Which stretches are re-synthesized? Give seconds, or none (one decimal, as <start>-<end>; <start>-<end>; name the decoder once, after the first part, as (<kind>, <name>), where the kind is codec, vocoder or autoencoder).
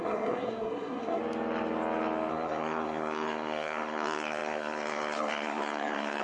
0.0-1.2 (codec, SNAC); 2.3-6.2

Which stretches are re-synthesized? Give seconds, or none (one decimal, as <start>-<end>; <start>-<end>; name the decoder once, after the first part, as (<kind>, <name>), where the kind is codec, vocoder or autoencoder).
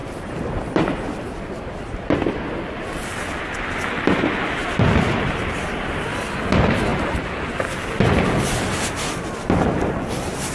0.0-0.9 (vocoder, BigVGAN v2); 4.6-6.2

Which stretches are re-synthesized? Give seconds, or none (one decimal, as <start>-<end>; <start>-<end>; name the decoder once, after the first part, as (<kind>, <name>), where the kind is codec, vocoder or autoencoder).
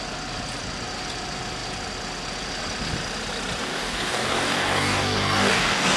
3.6-6.0 (codec, DAC)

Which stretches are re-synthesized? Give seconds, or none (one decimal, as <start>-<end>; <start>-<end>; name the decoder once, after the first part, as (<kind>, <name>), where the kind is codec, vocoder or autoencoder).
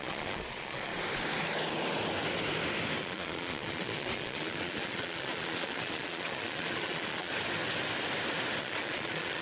0.0-0.9 (vocoder, Vocos); 3.0-7.3; 8.6-9.4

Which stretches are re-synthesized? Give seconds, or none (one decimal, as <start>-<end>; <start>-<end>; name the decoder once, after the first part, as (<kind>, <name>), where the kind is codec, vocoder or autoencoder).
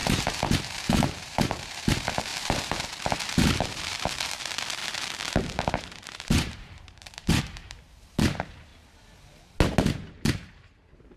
0.0-8.7 (vocoder, BigVGAN v2); 10.1-11.2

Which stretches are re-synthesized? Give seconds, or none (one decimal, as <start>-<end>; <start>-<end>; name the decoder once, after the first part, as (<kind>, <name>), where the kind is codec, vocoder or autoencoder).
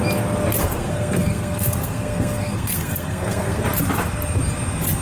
0.6-3.6 (codec, SNAC)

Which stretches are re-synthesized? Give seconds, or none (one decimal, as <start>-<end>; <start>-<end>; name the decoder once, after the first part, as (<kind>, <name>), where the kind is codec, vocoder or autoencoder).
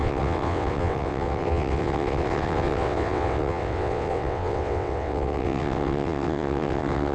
0.0-7.1 (vocoder, WaveNeXt)